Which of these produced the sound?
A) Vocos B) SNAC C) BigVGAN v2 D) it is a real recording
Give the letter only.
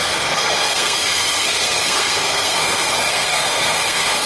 B